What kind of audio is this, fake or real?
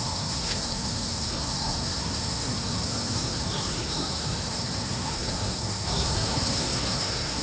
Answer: fake